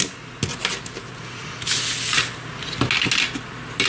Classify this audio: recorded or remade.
recorded